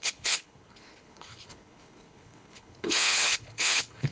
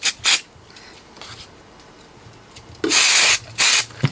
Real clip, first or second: second